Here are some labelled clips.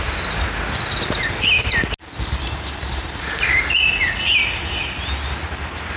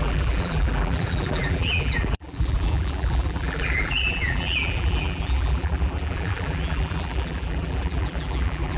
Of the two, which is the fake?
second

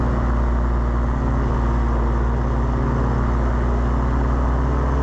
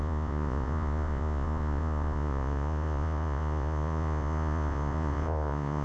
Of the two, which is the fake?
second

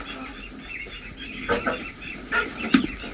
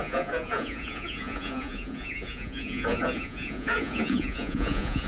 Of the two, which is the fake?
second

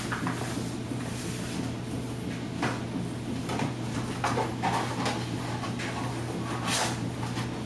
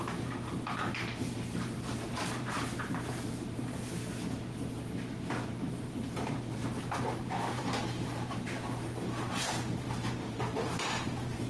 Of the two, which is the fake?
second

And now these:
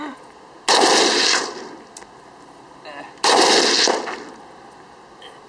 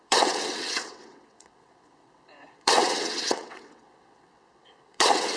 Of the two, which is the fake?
second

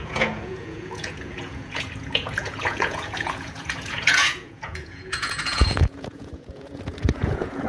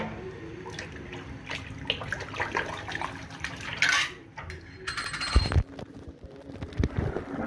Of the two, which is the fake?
first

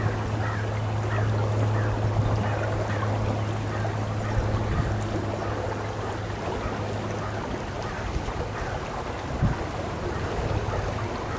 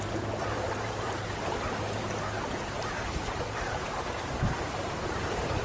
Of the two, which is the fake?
second